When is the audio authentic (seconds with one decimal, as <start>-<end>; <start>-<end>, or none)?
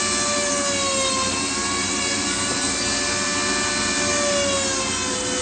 0.0-5.4